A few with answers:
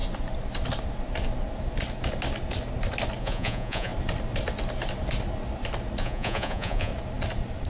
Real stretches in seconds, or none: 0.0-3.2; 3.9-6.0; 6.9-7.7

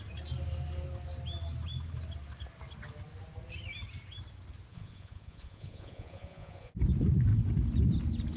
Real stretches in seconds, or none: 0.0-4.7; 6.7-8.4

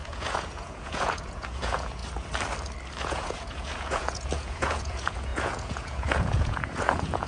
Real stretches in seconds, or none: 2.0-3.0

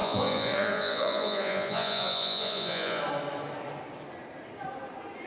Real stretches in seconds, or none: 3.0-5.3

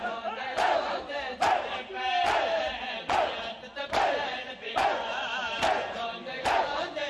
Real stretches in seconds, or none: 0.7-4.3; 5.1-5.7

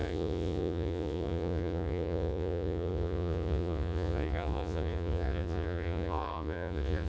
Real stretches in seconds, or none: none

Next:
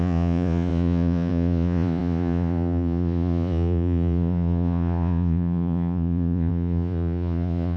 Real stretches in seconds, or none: none

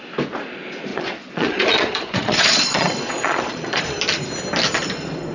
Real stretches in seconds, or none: 0.0-0.9; 3.8-5.3